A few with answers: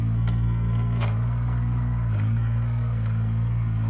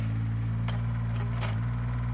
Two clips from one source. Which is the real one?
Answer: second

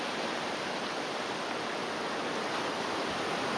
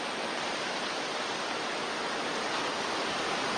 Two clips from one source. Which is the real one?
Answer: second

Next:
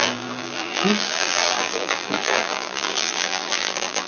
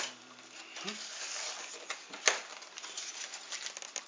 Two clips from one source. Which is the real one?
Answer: second